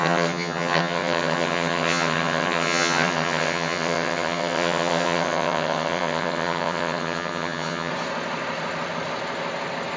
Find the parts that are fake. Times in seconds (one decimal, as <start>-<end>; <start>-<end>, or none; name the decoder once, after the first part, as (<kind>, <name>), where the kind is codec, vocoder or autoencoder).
0.0-7.9 (vocoder, HiFi-GAN)